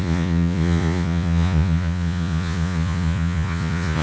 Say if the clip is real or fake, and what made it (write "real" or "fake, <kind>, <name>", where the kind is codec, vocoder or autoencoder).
fake, vocoder, Vocos